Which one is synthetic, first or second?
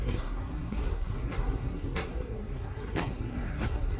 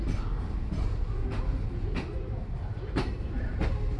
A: first